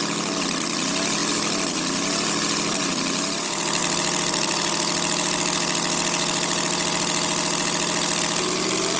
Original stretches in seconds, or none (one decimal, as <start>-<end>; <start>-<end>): 0.0-9.0